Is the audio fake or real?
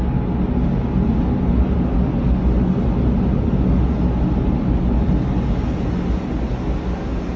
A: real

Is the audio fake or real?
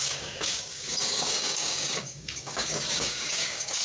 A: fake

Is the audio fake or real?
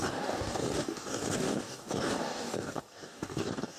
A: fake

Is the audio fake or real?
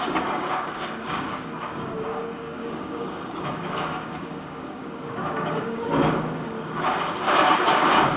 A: fake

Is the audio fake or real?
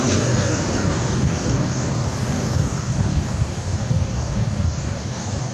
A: fake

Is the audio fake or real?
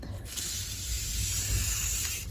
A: real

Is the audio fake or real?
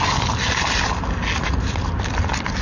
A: real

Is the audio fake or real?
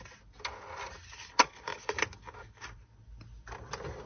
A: real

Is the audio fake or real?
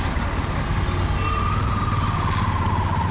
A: real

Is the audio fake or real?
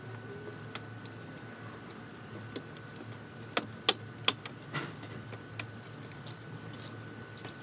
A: real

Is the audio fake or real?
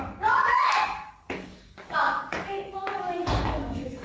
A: fake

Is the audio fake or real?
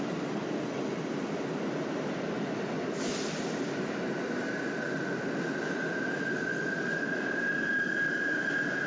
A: real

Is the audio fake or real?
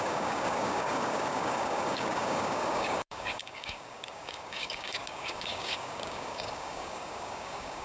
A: fake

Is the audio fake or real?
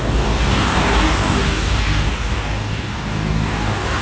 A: fake